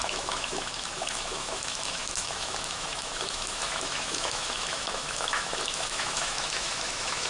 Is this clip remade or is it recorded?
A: remade